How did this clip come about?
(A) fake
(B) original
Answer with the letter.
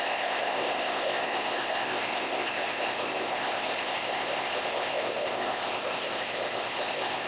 A